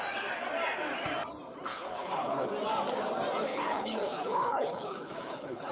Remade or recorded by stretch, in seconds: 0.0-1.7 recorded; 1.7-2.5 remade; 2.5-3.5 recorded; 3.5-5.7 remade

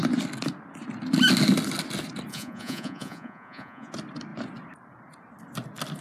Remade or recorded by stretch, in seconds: 0.0-2.3 recorded; 2.3-3.9 remade; 3.9-6.0 recorded

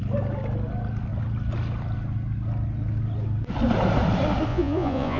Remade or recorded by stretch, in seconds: 0.0-4.5 recorded; 4.5-5.2 remade

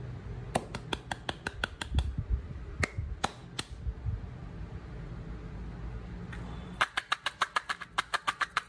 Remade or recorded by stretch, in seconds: 0.0-8.7 recorded

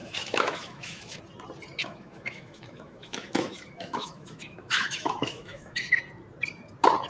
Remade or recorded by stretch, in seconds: 0.0-1.2 remade; 1.2-1.8 recorded; 1.8-6.0 remade; 6.0-7.1 recorded